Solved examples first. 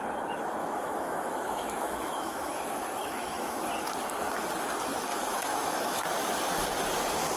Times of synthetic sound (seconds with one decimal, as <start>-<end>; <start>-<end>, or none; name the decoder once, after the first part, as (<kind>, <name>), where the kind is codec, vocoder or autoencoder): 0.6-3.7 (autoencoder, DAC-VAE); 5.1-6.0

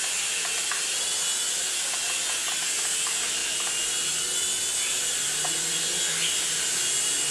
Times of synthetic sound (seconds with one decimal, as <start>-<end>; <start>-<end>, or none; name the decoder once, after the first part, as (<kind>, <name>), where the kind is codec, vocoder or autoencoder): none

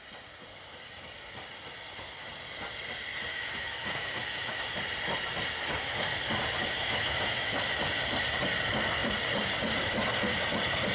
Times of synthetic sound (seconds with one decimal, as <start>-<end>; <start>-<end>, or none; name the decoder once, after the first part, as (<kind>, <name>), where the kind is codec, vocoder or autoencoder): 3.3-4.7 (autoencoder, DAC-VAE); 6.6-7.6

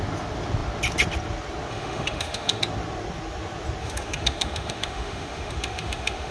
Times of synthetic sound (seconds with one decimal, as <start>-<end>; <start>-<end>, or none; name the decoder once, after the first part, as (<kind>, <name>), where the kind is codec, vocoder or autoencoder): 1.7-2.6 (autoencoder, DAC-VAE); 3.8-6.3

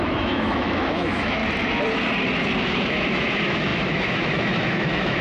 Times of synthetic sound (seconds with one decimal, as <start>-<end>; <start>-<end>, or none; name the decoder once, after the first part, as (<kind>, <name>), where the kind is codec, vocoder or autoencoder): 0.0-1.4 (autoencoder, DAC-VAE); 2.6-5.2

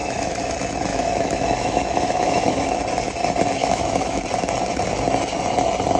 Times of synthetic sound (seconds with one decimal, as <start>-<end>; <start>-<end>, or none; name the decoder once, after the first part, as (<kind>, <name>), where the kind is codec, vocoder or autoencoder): 0.0-0.5 (autoencoder, DAC-VAE); 0.9-2.7; 3.6-4.2